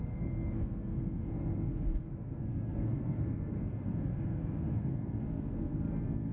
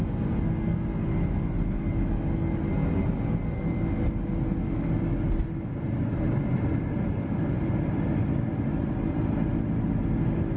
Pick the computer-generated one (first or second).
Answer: first